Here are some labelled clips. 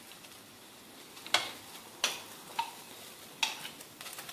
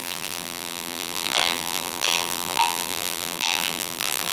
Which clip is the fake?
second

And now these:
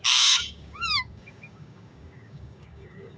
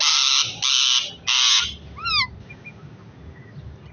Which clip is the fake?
first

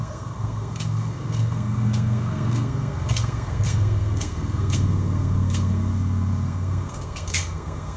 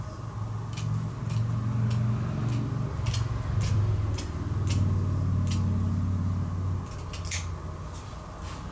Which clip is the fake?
first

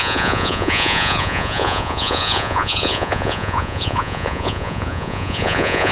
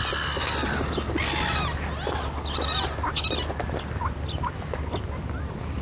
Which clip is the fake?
first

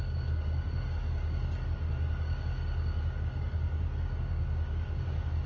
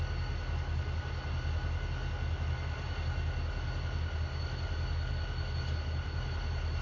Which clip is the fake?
first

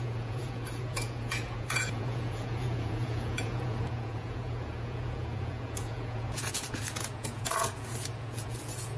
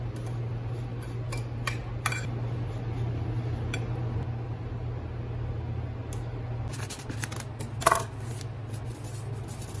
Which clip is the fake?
first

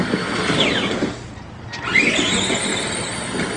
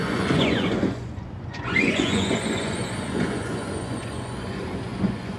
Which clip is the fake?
second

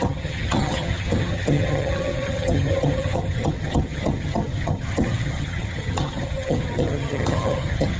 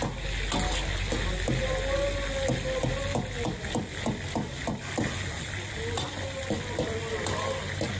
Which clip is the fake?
first